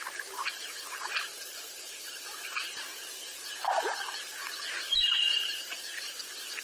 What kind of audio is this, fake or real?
fake